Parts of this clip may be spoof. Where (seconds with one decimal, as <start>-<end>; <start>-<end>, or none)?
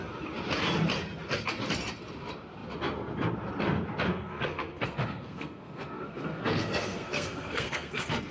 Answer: 4.1-8.3